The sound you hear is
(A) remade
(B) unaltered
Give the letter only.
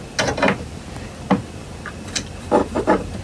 B